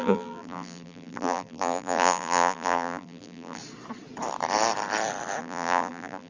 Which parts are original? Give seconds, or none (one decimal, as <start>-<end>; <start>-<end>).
3.6-5.4